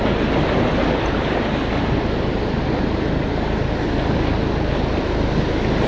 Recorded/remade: recorded